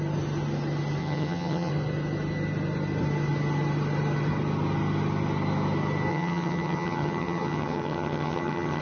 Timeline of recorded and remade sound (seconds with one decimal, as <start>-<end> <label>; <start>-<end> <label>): 0.0-1.0 recorded; 1.0-1.7 remade; 1.7-6.1 recorded; 6.1-8.8 remade